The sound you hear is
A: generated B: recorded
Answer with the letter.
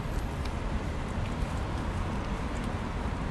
B